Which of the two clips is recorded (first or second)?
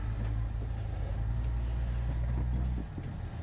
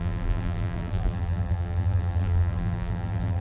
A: first